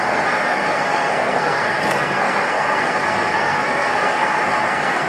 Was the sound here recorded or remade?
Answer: remade